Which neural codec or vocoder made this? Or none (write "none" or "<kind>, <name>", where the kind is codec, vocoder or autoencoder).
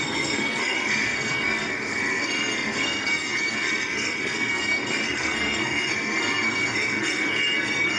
codec, SNAC